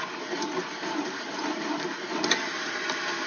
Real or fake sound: fake